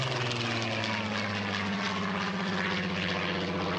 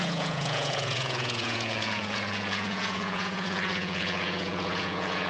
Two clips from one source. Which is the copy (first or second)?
second